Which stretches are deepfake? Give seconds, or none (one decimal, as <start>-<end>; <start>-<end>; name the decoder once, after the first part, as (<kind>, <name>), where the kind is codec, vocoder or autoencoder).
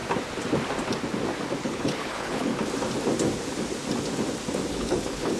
1.6-2.5 (codec, HILCodec); 4.7-5.4